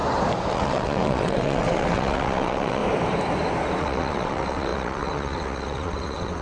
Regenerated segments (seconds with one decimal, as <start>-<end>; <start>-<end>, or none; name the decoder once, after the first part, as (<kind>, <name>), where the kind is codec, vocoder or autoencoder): 0.5-2.8 (vocoder, WaveNeXt); 3.8-6.4